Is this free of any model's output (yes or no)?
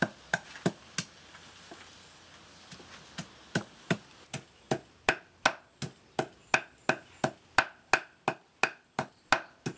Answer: yes